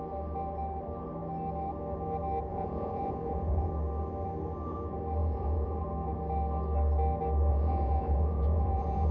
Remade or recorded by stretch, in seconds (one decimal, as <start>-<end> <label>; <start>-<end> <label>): 0.0-2.5 recorded; 2.5-3.7 remade; 3.7-5.2 recorded; 5.2-5.8 remade; 5.8-7.5 recorded; 7.5-9.1 remade